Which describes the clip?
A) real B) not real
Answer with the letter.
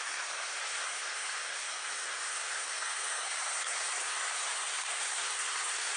B